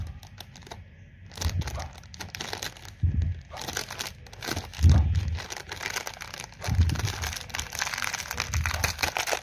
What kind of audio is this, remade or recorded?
recorded